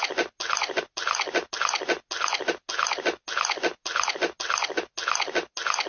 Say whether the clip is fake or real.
real